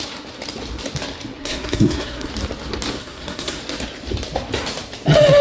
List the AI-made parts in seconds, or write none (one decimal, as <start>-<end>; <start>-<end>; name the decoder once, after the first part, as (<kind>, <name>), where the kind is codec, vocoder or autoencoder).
1.4-2.3 (codec, SNAC); 3.0-3.6